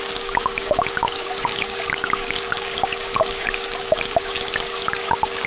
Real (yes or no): no